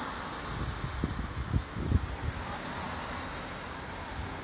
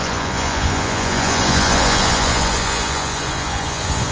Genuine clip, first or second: first